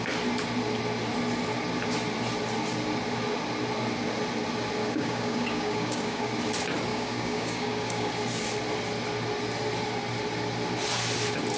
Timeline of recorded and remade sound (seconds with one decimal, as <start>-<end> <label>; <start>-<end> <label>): 0.0-4.8 recorded; 4.8-6.3 remade; 6.3-6.9 recorded; 6.9-8.1 remade; 8.1-11.6 recorded